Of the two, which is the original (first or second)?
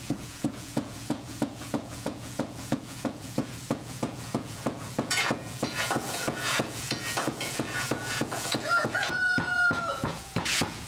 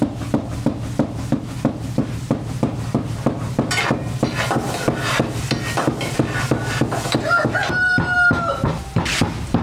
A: second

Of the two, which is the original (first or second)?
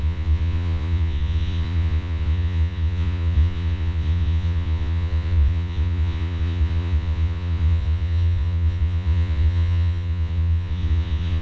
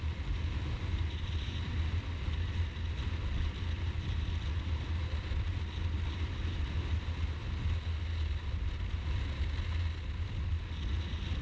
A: second